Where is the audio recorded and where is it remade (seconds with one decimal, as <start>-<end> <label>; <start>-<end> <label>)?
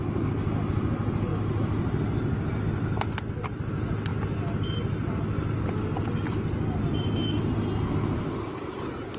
0.0-9.2 recorded